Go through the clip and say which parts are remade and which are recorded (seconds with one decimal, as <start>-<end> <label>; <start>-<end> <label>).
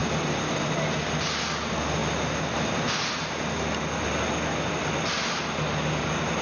0.0-6.4 recorded